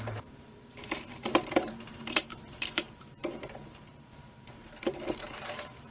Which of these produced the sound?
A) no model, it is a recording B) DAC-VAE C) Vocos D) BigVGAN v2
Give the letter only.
D